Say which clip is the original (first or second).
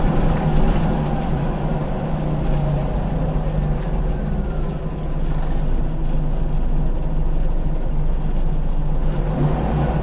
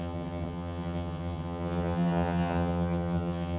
first